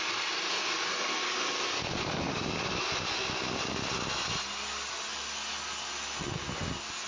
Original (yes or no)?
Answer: yes